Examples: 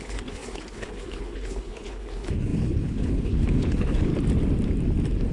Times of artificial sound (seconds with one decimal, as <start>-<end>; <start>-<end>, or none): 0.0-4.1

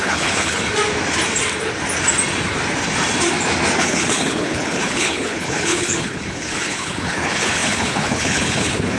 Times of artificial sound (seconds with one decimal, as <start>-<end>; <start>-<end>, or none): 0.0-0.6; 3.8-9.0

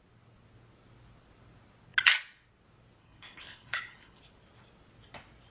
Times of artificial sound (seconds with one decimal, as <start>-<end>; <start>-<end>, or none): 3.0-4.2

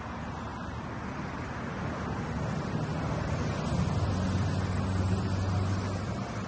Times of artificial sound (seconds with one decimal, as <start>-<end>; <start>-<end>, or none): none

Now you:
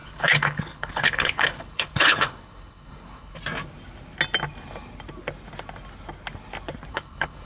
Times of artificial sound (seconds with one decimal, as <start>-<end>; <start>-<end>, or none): 0.0-3.4; 6.9-7.5

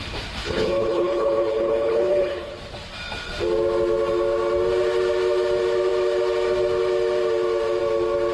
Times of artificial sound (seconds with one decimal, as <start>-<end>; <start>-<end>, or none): 0.4-2.5

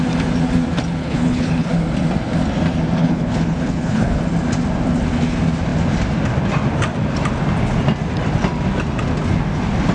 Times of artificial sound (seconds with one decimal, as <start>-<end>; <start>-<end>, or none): 1.0-1.7; 3.0-4.2

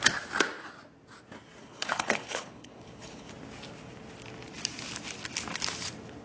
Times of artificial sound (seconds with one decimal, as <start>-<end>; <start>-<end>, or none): 1.6-3.3